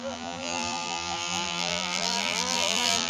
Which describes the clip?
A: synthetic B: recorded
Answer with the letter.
A